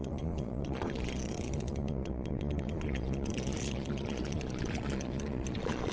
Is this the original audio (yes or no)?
no